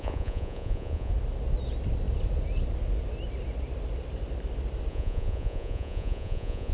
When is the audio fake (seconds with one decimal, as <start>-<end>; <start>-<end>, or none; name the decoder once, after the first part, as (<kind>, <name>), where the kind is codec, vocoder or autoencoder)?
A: 0.0-1.1 (vocoder, Vocos); 4.9-6.7